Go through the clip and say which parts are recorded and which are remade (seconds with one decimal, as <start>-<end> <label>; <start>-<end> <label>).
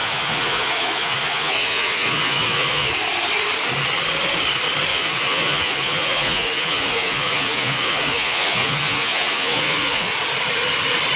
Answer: 0.0-2.9 remade; 2.9-4.9 recorded; 4.9-10.1 remade; 10.1-11.2 recorded